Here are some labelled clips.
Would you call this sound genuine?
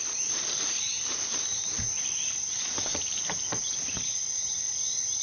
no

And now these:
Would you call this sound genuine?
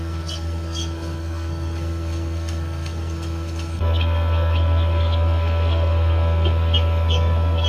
no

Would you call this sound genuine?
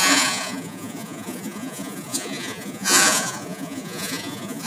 no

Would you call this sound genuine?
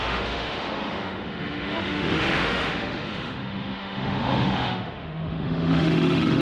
no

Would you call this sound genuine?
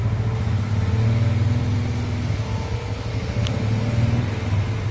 yes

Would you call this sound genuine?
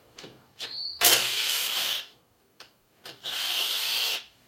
no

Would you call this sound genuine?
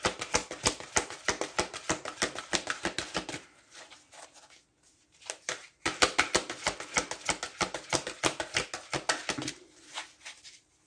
yes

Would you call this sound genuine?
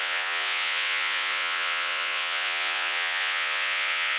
no